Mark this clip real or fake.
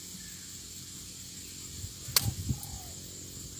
real